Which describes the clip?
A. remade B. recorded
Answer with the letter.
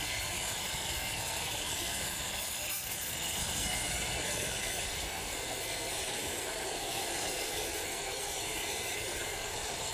A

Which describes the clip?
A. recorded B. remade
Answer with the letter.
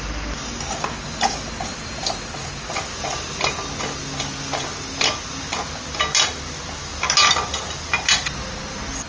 A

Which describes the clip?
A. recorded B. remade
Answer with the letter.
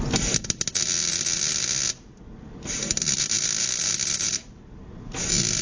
A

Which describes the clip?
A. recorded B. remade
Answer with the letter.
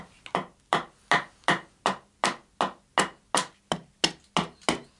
A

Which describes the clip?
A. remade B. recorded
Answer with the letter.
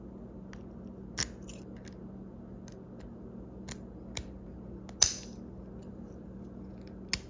B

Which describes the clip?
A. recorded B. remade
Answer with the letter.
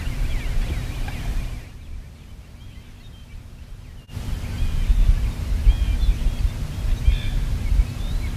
A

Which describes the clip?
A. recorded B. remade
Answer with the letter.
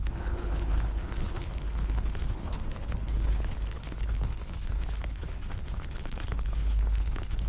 B